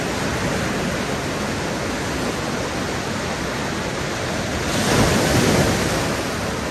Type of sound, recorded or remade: recorded